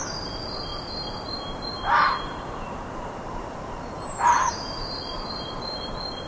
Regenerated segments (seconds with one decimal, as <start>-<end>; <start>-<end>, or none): none

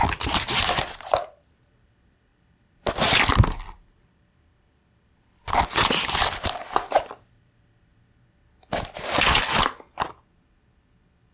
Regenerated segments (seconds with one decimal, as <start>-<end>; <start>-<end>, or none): 0.0-7.9

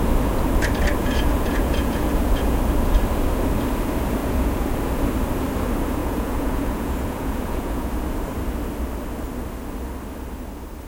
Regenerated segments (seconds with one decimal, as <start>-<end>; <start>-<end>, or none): 1.0-2.6; 4.2-4.8; 6.0-7.9

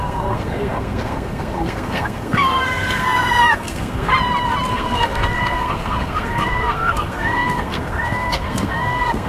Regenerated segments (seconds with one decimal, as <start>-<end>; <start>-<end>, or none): 0.0-4.1; 4.7-9.3

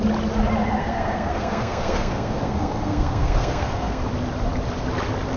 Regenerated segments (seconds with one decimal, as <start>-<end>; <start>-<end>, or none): 0.8-4.0

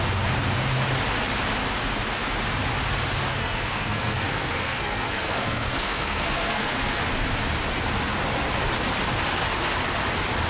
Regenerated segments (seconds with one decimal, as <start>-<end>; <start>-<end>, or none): 3.3-7.0

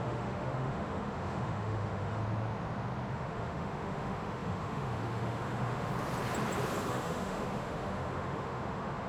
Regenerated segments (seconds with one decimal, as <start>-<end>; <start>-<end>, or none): 0.0-2.2; 3.1-5.9; 6.9-9.1

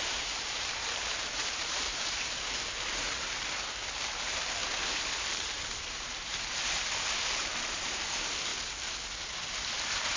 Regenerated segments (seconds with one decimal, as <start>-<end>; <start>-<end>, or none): 0.0-4.6; 5.2-8.5